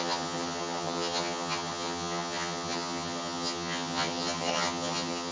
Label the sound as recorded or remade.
remade